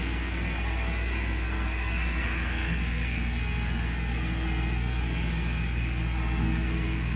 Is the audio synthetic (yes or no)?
yes